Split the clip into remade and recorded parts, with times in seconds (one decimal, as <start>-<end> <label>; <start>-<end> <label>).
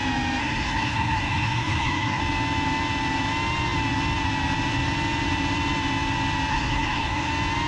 0.0-0.4 recorded; 0.4-2.2 remade; 2.2-6.5 recorded; 6.5-7.3 remade; 7.3-7.7 recorded